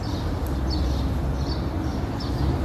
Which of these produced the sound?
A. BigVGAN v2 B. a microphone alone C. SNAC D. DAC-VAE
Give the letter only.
B